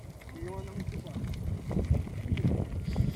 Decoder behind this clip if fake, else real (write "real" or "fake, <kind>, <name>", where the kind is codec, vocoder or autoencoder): real